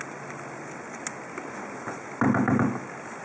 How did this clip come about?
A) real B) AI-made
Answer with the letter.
A